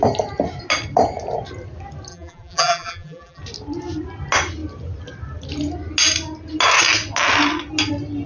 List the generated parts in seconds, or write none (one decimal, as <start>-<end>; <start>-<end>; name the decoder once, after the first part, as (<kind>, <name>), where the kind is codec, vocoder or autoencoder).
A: 2.1-3.4 (vocoder, BigVGAN v2)